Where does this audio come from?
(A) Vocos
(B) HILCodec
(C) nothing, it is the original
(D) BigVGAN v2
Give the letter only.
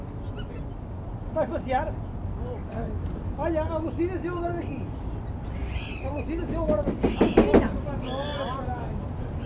C